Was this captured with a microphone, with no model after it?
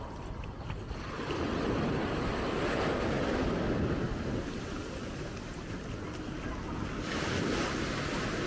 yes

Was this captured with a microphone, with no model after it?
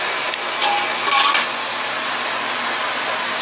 yes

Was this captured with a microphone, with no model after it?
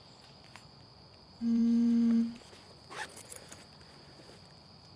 no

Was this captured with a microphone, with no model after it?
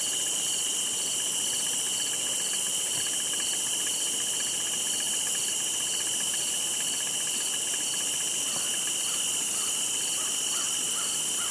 yes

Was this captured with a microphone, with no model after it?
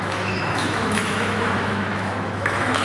no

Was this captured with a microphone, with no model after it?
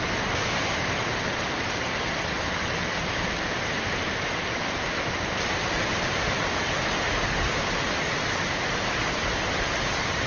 yes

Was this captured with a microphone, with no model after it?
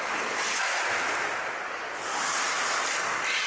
yes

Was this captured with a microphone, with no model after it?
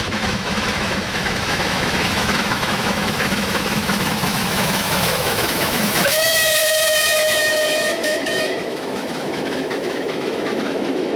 no